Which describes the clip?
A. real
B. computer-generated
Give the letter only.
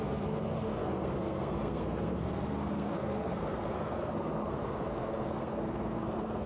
B